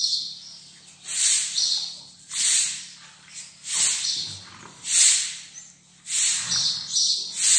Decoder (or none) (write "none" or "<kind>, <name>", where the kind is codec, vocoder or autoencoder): none